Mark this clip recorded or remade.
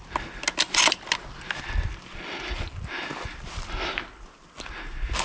recorded